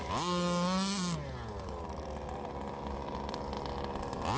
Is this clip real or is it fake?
real